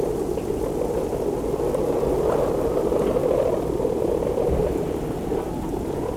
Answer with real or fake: real